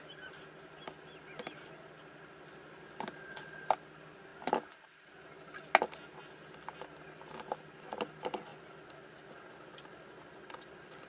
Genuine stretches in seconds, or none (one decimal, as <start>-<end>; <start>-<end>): 0.0-11.1